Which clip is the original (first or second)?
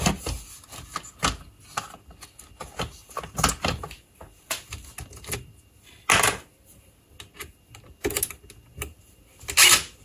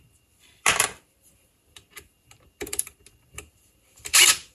first